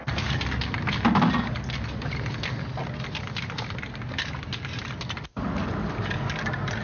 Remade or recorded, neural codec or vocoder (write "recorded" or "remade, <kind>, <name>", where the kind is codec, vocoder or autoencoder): recorded